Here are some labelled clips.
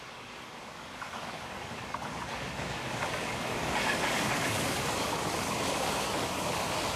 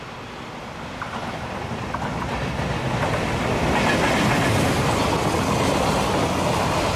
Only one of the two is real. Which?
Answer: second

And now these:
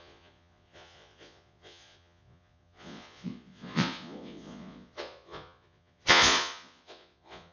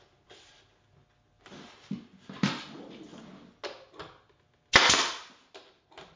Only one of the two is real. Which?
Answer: second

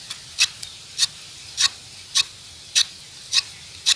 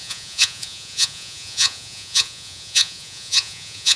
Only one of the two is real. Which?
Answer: first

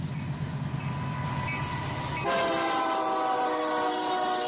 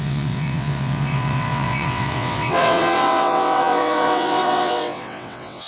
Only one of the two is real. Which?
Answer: first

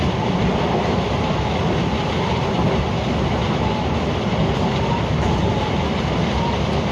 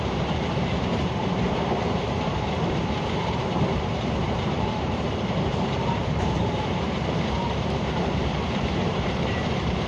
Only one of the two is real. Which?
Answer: first